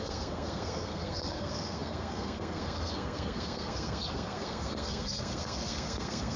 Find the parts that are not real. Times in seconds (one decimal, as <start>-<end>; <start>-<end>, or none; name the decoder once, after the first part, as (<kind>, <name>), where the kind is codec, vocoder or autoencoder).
0.0-6.4 (codec, SNAC)